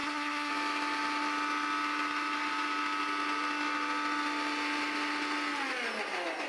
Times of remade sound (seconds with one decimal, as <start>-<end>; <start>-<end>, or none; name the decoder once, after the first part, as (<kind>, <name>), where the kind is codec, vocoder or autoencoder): 0.0-0.5 (codec, SNAC)